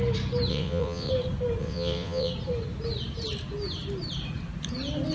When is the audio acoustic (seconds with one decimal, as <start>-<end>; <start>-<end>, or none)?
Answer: 0.0-0.5; 1.1-1.6; 2.3-5.1